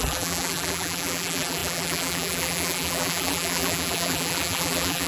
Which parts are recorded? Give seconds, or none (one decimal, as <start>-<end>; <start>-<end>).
none